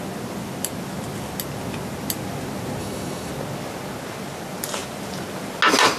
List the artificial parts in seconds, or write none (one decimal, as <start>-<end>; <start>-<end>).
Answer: 2.8-3.3